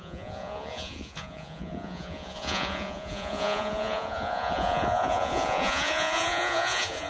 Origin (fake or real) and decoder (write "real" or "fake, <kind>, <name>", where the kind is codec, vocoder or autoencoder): fake, vocoder, Vocos